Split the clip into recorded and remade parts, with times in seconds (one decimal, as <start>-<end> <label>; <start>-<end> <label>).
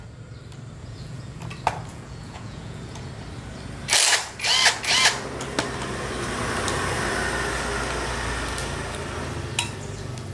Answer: 0.0-0.8 recorded; 0.8-1.4 remade; 1.4-1.9 recorded; 1.9-3.1 remade; 3.1-10.3 recorded